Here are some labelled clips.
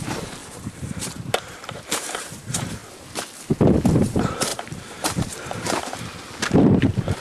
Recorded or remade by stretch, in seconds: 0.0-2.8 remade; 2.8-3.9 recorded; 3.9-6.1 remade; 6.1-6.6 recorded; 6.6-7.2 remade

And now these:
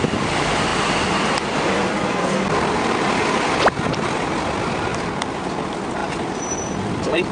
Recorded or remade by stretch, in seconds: 0.0-0.7 recorded; 0.7-3.1 remade; 3.1-6.0 recorded; 6.0-7.3 remade

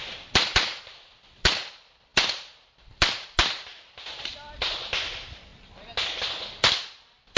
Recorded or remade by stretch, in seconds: 0.0-0.9 recorded; 0.9-5.5 remade; 5.5-6.7 recorded; 6.7-7.4 remade

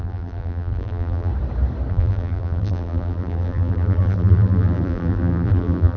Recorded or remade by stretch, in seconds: 0.0-1.3 remade; 1.3-1.9 recorded; 1.9-6.0 remade

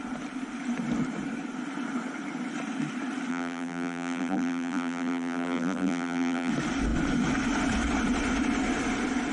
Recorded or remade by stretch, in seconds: 0.0-3.3 recorded; 3.3-6.5 remade; 6.5-9.3 recorded

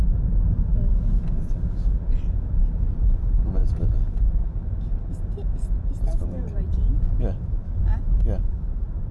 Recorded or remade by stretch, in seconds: 0.0-0.7 remade; 0.7-2.6 recorded; 2.6-3.6 remade; 3.6-6.2 recorded; 6.2-7.8 remade; 7.8-8.5 recorded; 8.5-9.1 remade